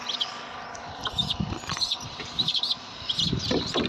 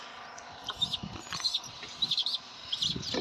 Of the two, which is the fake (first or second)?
first